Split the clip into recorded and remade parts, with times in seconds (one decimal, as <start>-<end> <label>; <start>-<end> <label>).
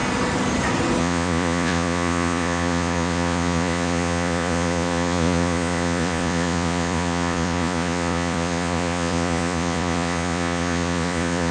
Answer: 0.0-1.0 recorded; 1.0-11.5 remade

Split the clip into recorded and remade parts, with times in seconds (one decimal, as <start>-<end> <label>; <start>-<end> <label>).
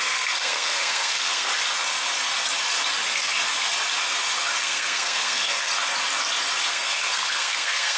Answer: 0.0-1.5 remade; 1.5-4.6 recorded; 4.6-5.7 remade; 5.7-6.7 recorded; 6.7-8.0 remade